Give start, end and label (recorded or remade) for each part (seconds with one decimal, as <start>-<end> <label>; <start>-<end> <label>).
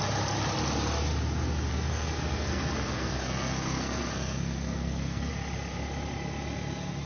0.0-1.7 recorded; 1.7-5.3 remade; 5.3-7.1 recorded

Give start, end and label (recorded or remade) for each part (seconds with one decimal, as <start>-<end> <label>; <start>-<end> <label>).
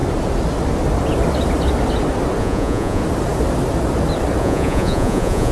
0.0-2.4 recorded; 2.4-3.0 remade; 3.0-4.4 recorded; 4.4-5.5 remade